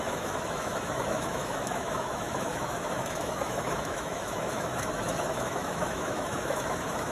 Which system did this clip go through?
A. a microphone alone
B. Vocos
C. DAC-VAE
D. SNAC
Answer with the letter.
C